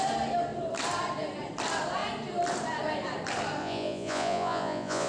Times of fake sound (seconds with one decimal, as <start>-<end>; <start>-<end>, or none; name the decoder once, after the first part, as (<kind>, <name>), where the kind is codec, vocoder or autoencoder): 3.6-5.1 (vocoder, Vocos)